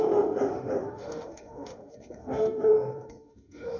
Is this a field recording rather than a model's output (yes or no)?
no